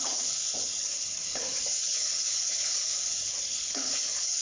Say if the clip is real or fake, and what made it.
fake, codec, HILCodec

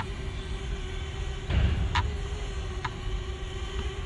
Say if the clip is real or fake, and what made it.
real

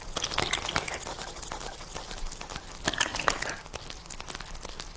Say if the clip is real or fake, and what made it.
real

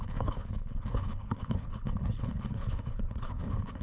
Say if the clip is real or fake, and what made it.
fake, codec, HILCodec